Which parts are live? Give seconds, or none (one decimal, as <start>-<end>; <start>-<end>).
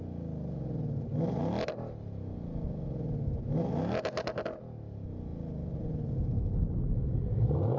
0.0-7.8